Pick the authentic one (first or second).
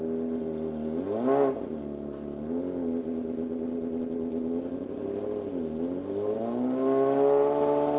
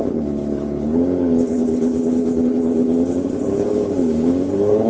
first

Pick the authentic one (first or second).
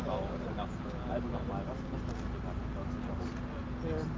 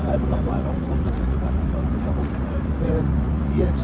first